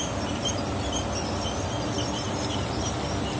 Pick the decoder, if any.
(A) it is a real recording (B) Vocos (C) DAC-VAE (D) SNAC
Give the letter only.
A